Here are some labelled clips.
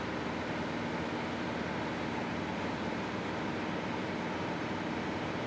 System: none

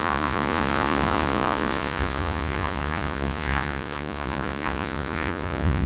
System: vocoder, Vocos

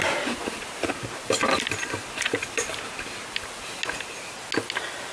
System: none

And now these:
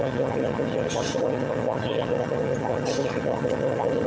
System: vocoder, HiFi-GAN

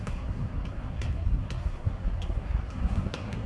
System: codec, SNAC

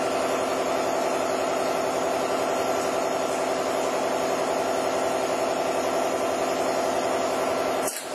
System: none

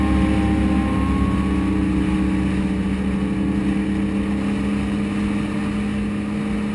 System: none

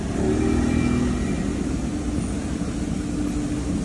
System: none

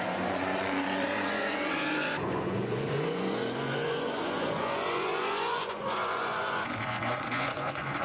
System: vocoder, Vocos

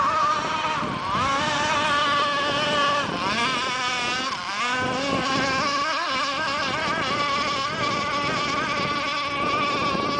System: none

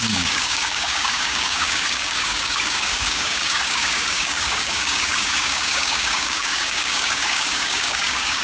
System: codec, DAC